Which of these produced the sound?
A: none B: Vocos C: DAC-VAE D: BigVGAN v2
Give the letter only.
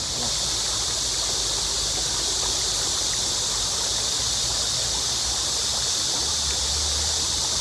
A